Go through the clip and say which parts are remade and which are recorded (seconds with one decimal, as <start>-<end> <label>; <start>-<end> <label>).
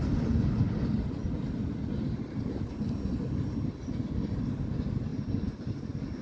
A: 0.0-6.2 recorded